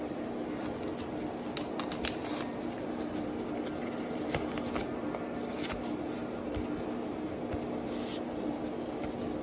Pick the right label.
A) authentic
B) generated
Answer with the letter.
A